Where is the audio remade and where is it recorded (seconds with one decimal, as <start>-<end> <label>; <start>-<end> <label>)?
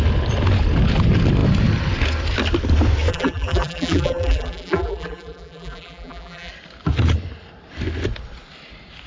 0.0-3.1 recorded; 3.1-6.5 remade; 6.5-9.1 recorded